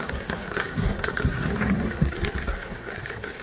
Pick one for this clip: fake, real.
fake